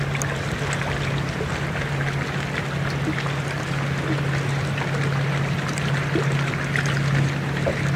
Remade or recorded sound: recorded